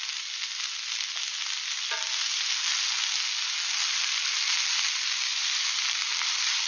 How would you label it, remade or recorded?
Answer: recorded